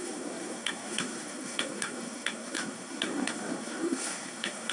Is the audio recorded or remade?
remade